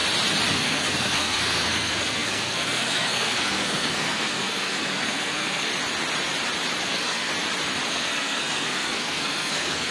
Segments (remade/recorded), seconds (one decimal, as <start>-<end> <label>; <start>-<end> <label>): 0.0-0.5 recorded; 0.5-5.7 remade; 5.7-6.8 recorded; 6.8-7.3 remade; 7.3-7.9 recorded; 7.9-9.9 remade